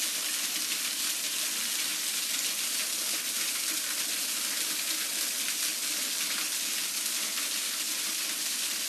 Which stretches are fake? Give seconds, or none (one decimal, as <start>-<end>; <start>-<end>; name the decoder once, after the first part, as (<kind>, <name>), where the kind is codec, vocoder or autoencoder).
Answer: none

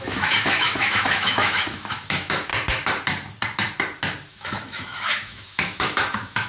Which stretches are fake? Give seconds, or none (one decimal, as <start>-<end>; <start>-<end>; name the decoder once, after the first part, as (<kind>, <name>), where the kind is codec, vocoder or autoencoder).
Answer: 0.0-2.5 (autoencoder, DAC-VAE); 4.3-6.5

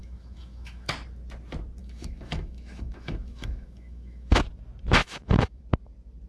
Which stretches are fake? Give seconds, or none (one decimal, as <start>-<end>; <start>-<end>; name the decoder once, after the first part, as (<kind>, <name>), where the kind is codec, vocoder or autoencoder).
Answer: 0.0-0.9 (autoencoder, DAC-VAE); 1.8-4.4; 5.0-5.6